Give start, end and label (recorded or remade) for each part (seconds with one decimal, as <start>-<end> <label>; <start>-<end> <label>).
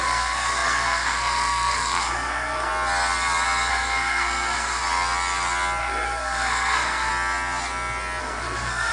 0.0-2.7 remade; 2.7-3.7 recorded; 3.7-4.8 remade; 4.8-5.8 recorded; 5.8-7.1 remade; 7.1-8.2 recorded; 8.2-8.9 remade